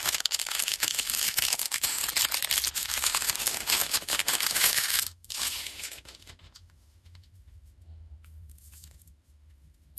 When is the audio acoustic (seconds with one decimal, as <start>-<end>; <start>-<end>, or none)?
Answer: 2.0-2.7